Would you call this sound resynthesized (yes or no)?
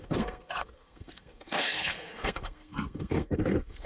yes